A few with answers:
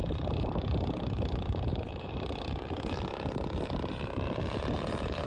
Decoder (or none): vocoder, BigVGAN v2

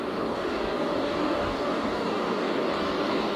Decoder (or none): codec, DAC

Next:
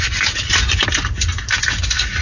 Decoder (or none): none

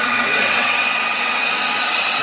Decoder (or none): vocoder, WaveNeXt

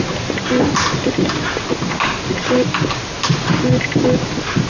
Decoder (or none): none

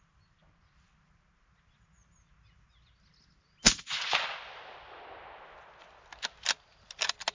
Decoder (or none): none